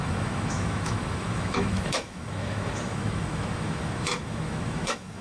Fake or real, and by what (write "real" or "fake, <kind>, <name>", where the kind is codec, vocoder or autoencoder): fake, autoencoder, DAC-VAE